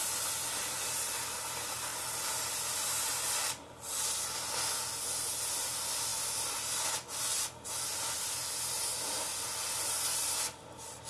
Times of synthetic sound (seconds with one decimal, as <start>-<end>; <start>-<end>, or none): none